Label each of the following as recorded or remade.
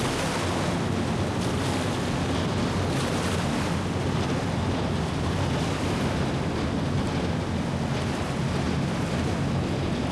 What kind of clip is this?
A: recorded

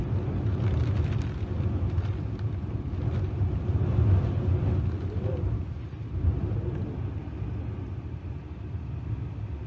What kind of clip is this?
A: recorded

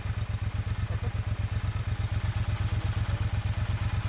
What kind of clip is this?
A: recorded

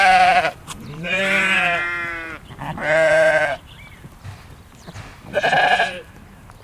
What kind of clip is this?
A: remade